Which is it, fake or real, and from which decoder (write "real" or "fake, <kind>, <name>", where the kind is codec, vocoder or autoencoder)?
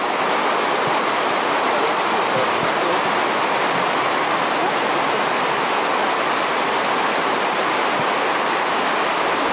real